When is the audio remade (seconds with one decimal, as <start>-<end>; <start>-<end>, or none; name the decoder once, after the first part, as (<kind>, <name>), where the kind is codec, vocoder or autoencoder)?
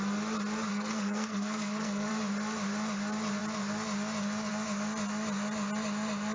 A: 0.7-2.1 (codec, SNAC)